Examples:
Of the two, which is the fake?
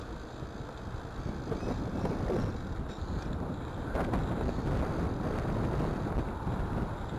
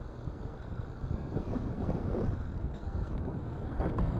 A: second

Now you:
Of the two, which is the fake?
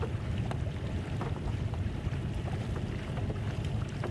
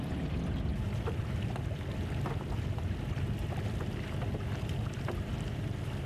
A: first